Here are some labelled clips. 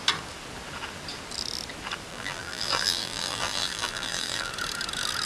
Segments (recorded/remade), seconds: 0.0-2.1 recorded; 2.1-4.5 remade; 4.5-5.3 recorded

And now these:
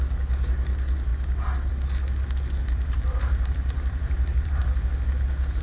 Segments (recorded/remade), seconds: 0.0-2.6 recorded; 2.6-4.6 remade; 4.6-5.6 recorded

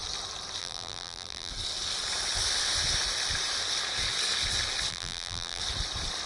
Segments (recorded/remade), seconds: 0.0-0.6 recorded; 0.6-1.5 remade; 1.5-4.9 recorded; 4.9-5.6 remade; 5.6-6.3 recorded

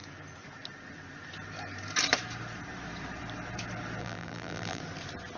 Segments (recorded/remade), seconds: 0.0-4.0 recorded; 4.0-4.8 remade; 4.8-5.4 recorded

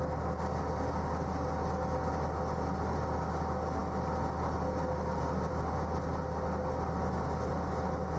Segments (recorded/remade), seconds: 0.0-8.2 recorded